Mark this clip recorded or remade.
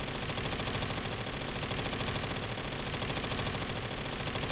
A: recorded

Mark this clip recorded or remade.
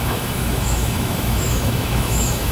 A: remade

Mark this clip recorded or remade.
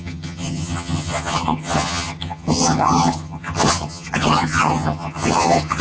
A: remade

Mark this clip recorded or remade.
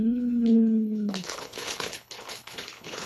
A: remade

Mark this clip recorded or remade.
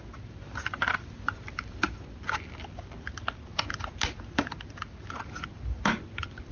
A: recorded